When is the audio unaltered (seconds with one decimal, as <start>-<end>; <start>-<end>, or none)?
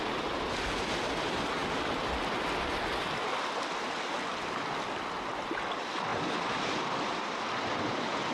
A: 0.0-1.6; 3.0-4.3; 4.9-6.1; 7.4-8.3